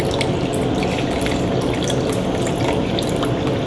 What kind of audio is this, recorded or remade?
recorded